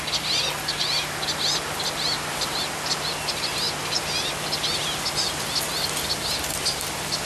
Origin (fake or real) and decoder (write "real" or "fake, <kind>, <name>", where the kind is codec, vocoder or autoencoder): real